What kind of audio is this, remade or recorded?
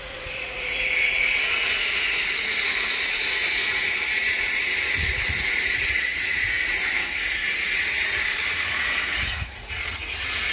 remade